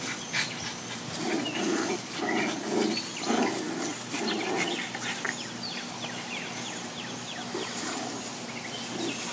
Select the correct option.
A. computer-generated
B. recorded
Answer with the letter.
B